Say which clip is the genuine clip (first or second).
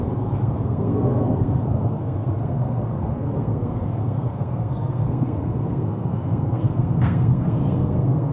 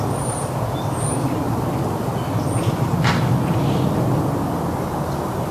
second